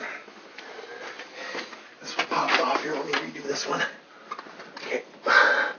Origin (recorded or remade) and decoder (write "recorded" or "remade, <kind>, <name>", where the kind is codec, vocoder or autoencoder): recorded